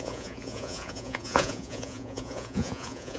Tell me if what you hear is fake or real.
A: fake